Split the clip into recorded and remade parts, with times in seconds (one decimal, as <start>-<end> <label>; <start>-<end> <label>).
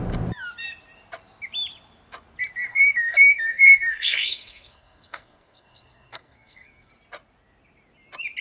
0.0-2.7 recorded; 2.7-6.9 remade; 6.9-8.4 recorded